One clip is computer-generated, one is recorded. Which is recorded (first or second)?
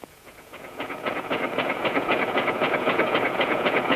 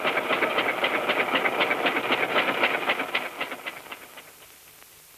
second